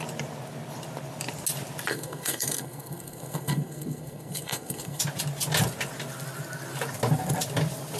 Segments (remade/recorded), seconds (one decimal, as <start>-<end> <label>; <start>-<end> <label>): 0.0-1.9 recorded; 1.9-5.0 remade; 5.0-8.0 recorded